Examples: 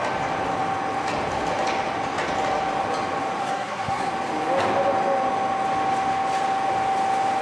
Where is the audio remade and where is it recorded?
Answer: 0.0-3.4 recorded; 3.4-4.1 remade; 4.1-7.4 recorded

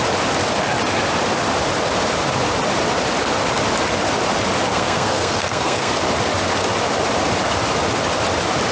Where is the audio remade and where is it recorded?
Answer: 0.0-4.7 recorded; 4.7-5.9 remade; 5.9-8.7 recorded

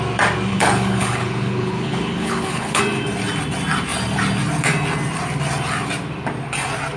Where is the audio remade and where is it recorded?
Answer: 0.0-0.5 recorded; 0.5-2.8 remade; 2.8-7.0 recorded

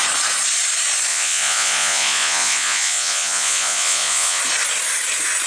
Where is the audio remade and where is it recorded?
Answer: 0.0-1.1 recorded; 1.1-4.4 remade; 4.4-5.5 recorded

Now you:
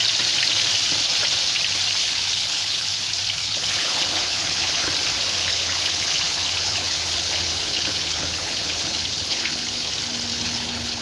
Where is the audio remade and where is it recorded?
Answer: 0.0-2.0 recorded; 2.0-3.0 remade; 3.0-3.4 recorded; 3.4-4.9 remade; 4.9-5.4 recorded; 5.4-9.9 remade; 9.9-10.3 recorded; 10.3-11.0 remade